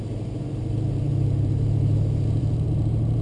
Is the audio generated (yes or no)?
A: yes